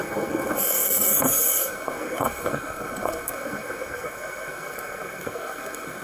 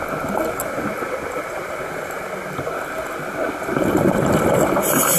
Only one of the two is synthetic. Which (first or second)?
first